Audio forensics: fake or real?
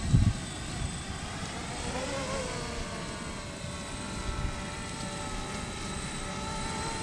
real